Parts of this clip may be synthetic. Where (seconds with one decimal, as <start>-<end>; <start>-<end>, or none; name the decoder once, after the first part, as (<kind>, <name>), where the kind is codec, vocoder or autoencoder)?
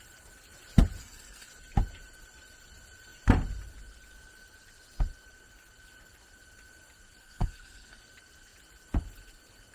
1.0-1.5 (codec, SNAC); 7.2-8.0